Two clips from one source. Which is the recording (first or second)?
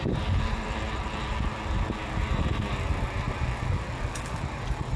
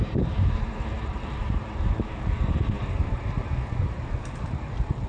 first